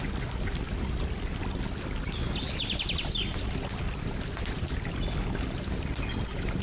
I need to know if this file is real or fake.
real